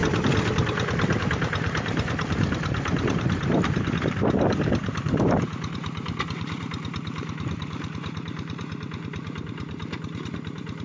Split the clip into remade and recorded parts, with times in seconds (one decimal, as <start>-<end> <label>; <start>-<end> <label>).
0.0-1.2 recorded; 1.2-10.8 remade